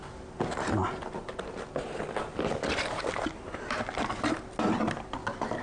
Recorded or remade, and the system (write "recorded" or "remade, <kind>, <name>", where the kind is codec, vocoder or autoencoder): recorded